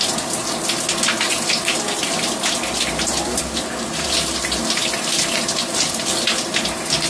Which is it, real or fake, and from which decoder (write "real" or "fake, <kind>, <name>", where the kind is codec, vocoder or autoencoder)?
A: real